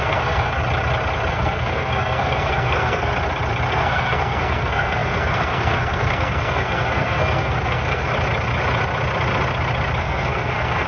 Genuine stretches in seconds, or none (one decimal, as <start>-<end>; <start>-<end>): 0.6-1.3; 3.1-3.7; 8.1-10.0